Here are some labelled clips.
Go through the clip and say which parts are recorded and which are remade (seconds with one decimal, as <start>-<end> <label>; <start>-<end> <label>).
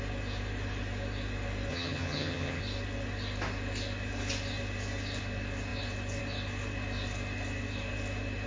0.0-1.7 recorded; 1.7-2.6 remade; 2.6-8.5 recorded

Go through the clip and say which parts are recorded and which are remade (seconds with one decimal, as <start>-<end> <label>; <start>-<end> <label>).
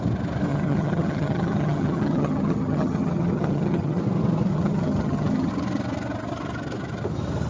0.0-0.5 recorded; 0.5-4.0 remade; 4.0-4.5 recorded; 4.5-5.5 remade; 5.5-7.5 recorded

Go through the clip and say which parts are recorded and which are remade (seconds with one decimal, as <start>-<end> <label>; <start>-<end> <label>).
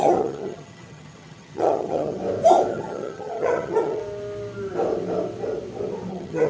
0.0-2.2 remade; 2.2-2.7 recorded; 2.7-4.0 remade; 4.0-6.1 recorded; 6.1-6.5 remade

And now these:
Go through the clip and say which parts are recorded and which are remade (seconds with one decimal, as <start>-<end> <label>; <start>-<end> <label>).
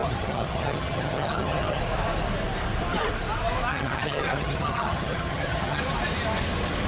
0.0-1.8 remade; 1.8-3.7 recorded; 3.7-5.8 remade; 5.8-6.9 recorded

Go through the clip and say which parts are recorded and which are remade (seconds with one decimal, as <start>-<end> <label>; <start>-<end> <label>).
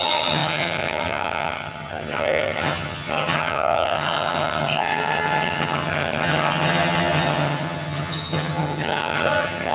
0.0-9.7 remade